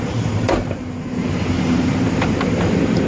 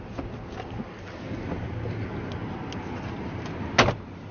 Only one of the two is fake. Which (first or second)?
first